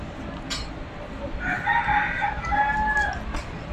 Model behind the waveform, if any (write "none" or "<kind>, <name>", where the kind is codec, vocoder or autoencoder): none